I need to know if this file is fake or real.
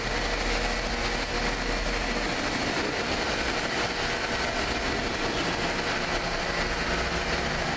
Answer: real